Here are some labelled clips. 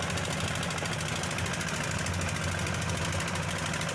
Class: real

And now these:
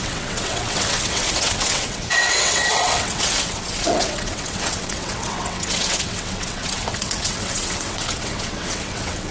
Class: fake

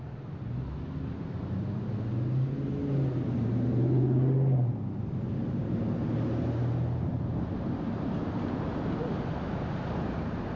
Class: real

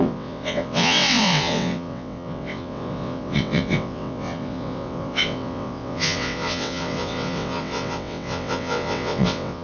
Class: fake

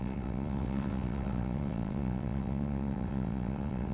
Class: fake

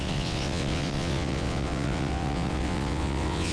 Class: fake